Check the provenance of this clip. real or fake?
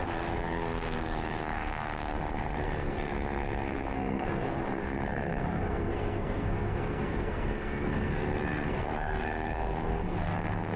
fake